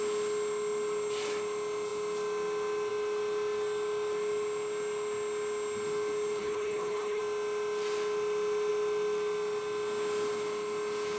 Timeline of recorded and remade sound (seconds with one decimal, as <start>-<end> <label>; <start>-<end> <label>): 0.0-6.4 recorded; 6.4-7.2 remade; 7.2-11.2 recorded